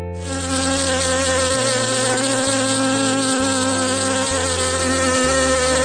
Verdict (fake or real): real